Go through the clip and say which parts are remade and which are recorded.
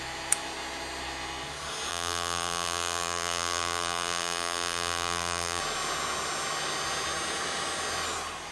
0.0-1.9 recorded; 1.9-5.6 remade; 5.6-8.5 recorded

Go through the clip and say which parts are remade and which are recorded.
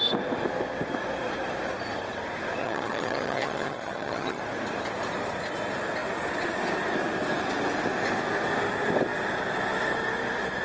0.0-2.6 recorded; 2.6-4.4 remade; 4.4-10.6 recorded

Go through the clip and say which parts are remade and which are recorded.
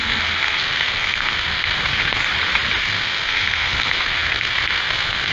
0.0-2.2 remade; 2.2-2.8 recorded; 2.8-5.3 remade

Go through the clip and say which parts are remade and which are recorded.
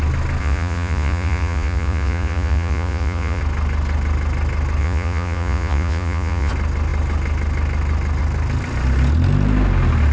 0.0-0.4 recorded; 0.4-3.4 remade; 3.4-4.8 recorded; 4.8-6.5 remade; 6.5-10.1 recorded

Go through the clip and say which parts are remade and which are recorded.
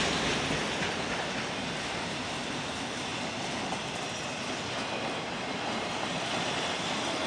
0.0-7.3 recorded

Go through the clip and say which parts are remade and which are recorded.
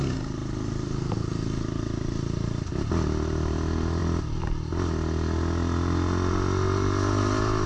0.0-7.7 recorded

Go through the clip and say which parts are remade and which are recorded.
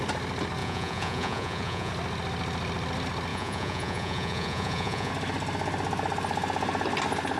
0.0-0.6 recorded; 0.6-1.9 remade; 1.9-3.3 recorded; 3.3-5.1 remade; 5.1-7.4 recorded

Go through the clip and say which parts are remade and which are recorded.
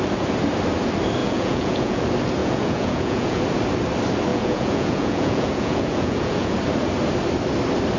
0.0-1.2 recorded; 1.2-2.0 remade; 2.0-2.4 recorded; 2.4-3.4 remade; 3.4-4.3 recorded; 4.3-6.6 remade; 6.6-8.0 recorded